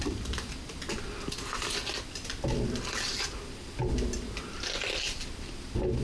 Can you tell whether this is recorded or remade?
recorded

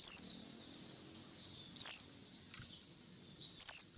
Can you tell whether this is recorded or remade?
recorded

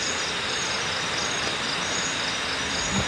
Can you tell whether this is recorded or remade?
recorded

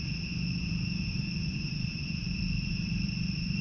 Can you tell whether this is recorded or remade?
remade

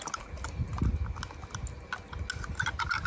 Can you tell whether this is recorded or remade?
recorded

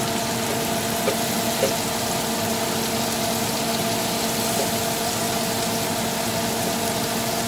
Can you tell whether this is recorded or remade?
recorded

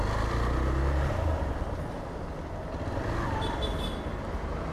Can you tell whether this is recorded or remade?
recorded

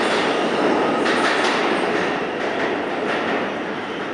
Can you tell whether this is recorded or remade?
recorded